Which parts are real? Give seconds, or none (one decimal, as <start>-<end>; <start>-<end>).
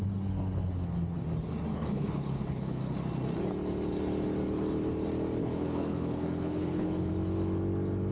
0.0-1.7; 2.8-5.4; 7.1-8.1